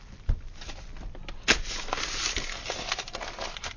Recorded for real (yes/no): yes